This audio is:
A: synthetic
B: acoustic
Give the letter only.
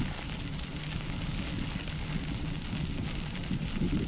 B